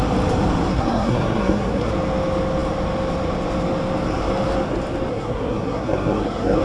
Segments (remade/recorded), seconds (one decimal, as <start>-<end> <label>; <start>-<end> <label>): 0.0-0.7 recorded; 0.7-1.9 remade; 1.9-5.1 recorded; 5.1-6.6 remade